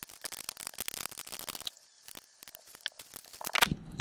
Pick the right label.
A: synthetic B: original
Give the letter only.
B